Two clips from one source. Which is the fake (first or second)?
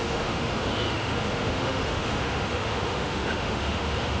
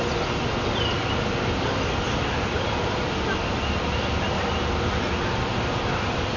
first